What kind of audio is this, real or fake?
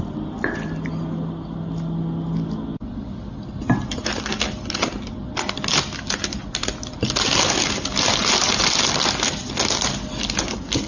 real